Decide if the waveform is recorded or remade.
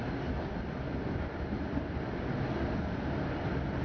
remade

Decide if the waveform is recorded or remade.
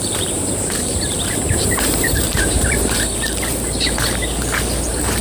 remade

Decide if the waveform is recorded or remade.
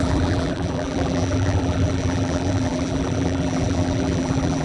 remade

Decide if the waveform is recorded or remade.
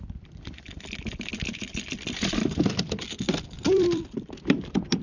remade